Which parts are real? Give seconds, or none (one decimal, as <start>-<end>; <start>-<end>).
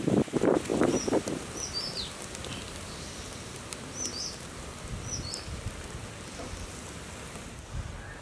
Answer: 0.0-8.2